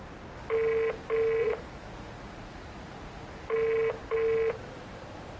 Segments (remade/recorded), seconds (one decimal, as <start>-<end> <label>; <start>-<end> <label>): 0.0-1.4 recorded; 1.4-3.3 remade; 3.3-5.4 recorded